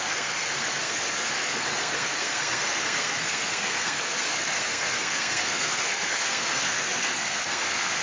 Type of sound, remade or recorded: remade